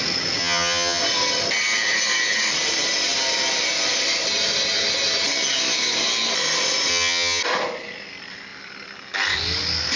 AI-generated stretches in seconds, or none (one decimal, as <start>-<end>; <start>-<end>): 0.4-1.0; 6.9-7.4